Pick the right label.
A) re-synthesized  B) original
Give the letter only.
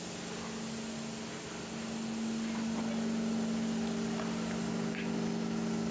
B